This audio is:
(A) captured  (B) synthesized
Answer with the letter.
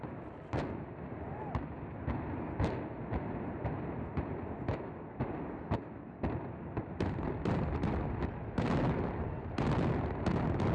A